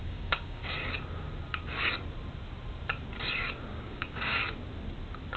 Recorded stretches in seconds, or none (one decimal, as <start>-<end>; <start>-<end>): 0.6-3.7; 4.4-5.4